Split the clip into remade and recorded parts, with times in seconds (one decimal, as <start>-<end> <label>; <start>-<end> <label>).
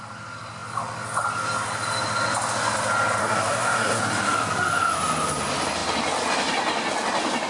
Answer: 0.0-3.2 recorded; 3.2-4.0 remade; 4.0-7.5 recorded